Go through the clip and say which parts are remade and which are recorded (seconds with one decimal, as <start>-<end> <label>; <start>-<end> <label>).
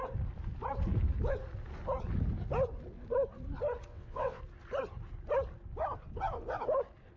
0.0-3.9 recorded; 3.9-4.4 remade; 4.4-7.2 recorded